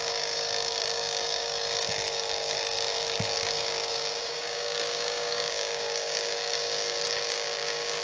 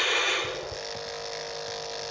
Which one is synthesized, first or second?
first